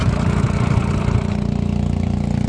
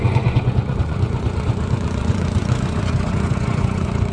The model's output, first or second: second